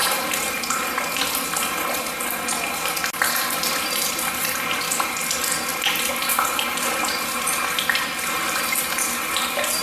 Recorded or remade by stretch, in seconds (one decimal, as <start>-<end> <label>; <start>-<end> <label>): 0.0-9.8 recorded